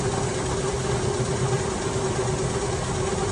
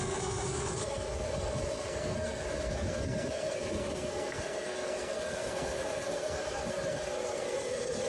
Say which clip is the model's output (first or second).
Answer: second